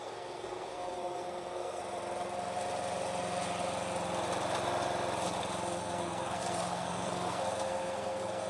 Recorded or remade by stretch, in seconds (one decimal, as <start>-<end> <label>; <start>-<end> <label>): 0.0-1.8 remade; 1.8-5.8 recorded; 5.8-8.5 remade